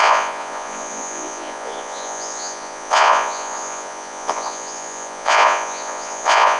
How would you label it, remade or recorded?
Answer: remade